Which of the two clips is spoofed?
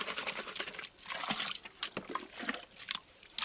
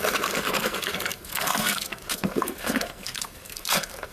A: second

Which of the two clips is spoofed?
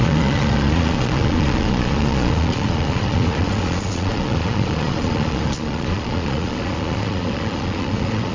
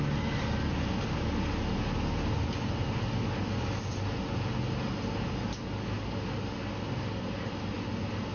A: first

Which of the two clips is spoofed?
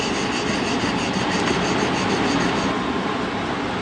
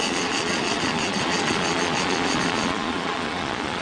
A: second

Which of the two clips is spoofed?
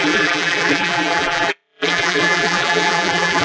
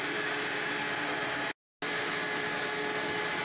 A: first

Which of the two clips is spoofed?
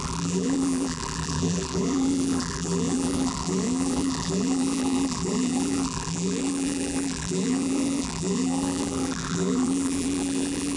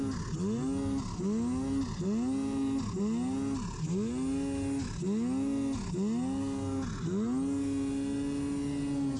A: first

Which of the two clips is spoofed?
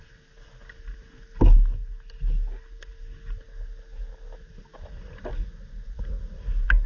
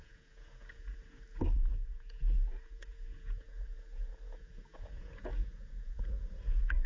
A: second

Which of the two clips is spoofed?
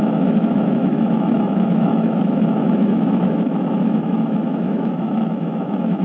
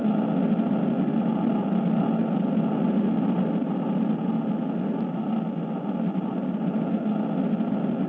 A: first